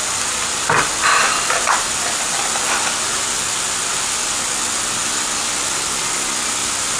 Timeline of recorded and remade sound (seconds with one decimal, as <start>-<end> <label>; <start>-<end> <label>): 0.0-7.0 recorded